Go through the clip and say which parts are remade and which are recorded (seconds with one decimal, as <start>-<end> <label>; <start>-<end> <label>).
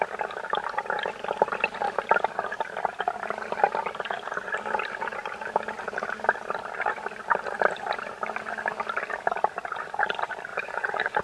0.0-10.5 recorded; 10.5-11.2 remade